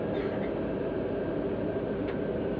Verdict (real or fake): real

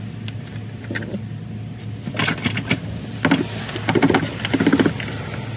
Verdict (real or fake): real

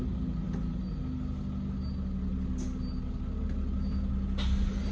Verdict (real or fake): real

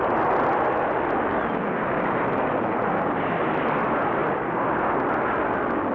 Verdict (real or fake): real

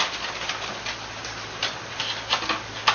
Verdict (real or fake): real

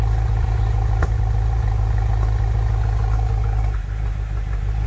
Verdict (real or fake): real